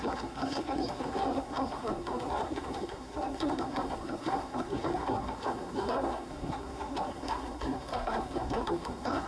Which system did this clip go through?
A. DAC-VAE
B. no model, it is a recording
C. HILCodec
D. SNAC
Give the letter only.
D